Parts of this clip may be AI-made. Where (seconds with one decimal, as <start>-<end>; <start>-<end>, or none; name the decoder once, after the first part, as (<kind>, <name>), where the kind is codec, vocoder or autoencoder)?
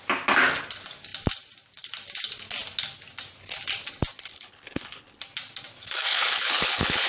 4.3-5.2 (codec, HILCodec); 6.1-7.1